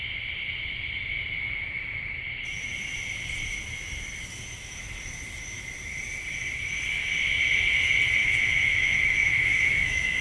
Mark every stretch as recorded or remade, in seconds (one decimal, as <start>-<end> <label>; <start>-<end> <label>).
0.0-8.2 recorded; 8.2-10.2 remade